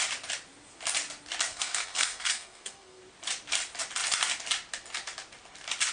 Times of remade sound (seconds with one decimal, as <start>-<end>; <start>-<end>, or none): 1.5-3.0